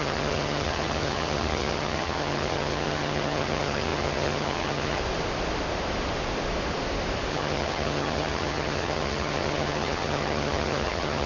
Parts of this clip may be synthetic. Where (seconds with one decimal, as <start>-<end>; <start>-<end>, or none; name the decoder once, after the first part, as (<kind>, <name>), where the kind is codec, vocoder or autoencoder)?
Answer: 0.0-5.0 (vocoder, HiFi-GAN); 7.3-11.3